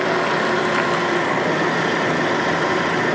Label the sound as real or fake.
real